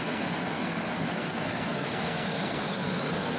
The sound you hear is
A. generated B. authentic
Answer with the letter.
A